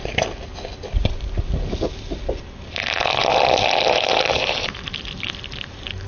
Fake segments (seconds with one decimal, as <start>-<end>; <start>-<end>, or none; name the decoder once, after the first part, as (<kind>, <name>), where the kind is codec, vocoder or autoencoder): 4.1-4.8 (vocoder, BigVGAN v2)